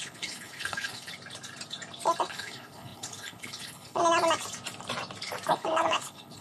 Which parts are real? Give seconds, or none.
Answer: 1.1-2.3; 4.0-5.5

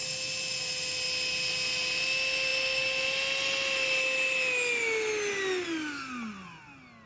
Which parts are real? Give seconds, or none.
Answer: 0.0-7.1

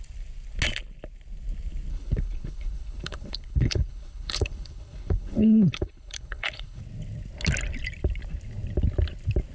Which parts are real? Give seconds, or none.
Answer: 0.0-1.9; 6.8-9.5

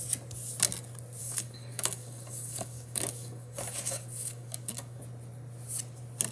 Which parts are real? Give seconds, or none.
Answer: 0.0-1.2; 5.0-6.3

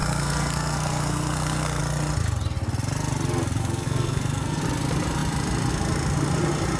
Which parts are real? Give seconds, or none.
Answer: 1.8-3.6; 4.6-6.8

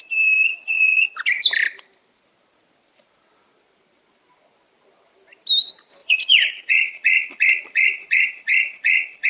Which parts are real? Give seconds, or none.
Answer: 0.0-0.5; 1.1-6.0

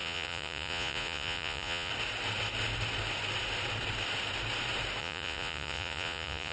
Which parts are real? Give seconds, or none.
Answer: 1.9-5.0